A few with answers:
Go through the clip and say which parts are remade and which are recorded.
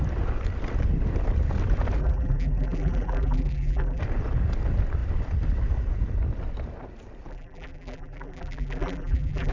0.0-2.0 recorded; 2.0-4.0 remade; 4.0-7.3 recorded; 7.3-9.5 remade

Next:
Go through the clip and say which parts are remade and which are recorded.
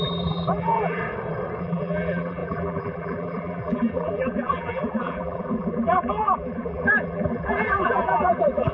0.0-1.0 remade; 1.0-1.6 recorded; 1.6-8.7 remade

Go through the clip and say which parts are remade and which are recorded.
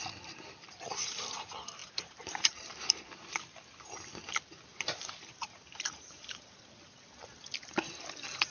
0.0-1.8 recorded; 1.8-3.1 remade; 3.1-4.7 recorded; 4.7-6.6 remade; 6.6-8.5 recorded